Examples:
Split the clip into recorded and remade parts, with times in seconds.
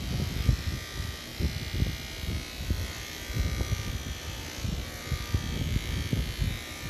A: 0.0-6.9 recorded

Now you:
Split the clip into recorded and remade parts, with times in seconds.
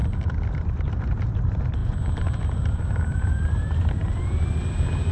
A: 0.0-1.8 recorded; 1.8-5.1 remade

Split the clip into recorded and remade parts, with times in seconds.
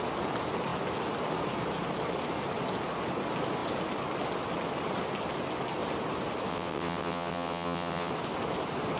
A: 0.0-6.5 recorded; 6.5-8.1 remade; 8.1-9.0 recorded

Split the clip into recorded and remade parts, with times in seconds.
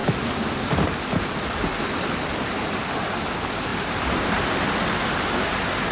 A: 0.0-3.7 recorded; 3.7-4.3 remade; 4.3-5.9 recorded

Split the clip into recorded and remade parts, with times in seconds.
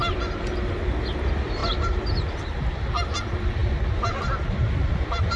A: 0.0-5.4 recorded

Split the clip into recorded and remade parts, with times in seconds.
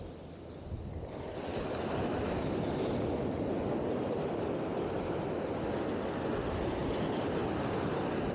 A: 0.0-8.3 recorded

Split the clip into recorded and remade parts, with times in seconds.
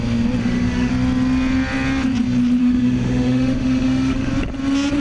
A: 0.0-0.4 recorded; 0.4-0.9 remade; 0.9-2.6 recorded; 2.6-4.3 remade; 4.3-5.0 recorded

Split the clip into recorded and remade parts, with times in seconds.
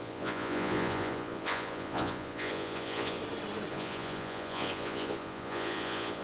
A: 0.0-3.2 remade; 3.2-3.7 recorded; 3.7-6.2 remade